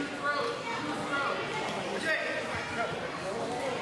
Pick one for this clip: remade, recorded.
recorded